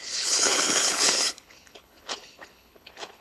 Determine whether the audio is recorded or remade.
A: remade